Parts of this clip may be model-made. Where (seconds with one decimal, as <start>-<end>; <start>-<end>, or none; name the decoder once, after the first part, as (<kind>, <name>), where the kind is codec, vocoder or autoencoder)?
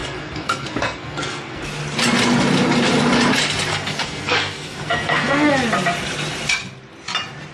0.0-1.6 (codec, SNAC); 3.7-5.5